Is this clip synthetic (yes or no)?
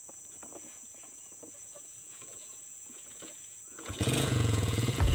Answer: yes